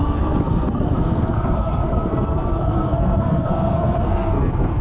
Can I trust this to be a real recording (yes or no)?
no